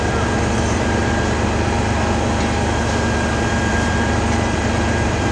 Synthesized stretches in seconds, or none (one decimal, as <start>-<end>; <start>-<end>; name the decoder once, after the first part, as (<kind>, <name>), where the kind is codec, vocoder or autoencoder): 0.0-1.0 (vocoder, BigVGAN v2); 3.5-5.3